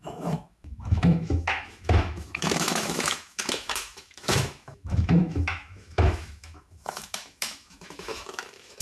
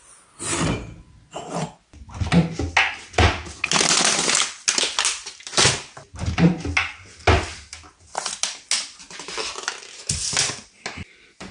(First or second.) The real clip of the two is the second